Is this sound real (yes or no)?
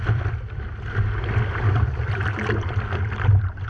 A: yes